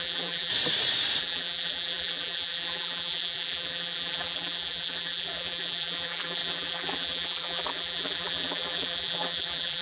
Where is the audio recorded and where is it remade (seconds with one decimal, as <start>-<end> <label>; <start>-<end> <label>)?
0.0-0.5 remade; 0.5-1.2 recorded; 1.2-9.8 remade